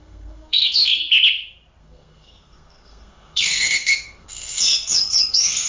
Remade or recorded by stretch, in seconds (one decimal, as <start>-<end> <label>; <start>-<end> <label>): 0.0-1.0 remade; 1.0-1.8 recorded; 1.8-5.7 remade